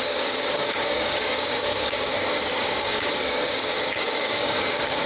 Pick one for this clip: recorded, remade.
remade